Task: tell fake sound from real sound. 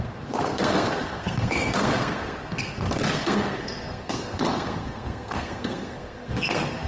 fake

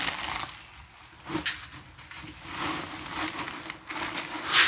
real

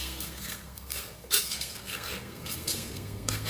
fake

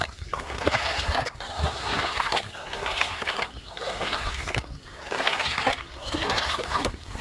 fake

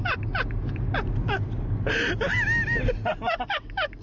real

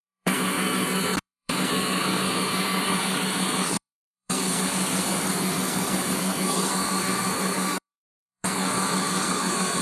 fake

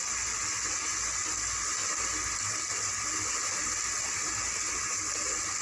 real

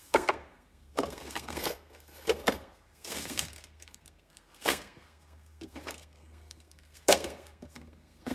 fake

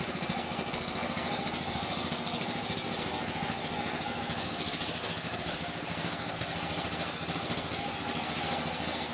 fake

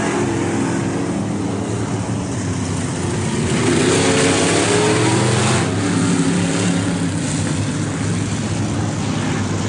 real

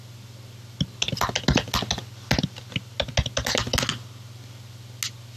real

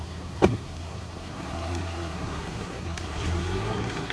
fake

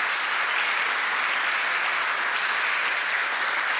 real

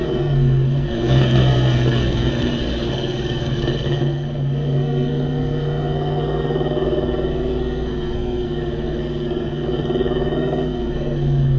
fake